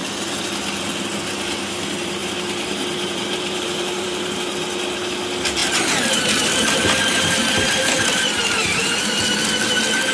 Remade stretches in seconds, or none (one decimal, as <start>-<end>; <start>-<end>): 2.2-4.5; 5.6-9.2